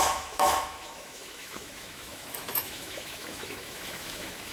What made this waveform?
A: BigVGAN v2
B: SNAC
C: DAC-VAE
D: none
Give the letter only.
C